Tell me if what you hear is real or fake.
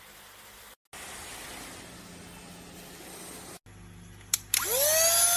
real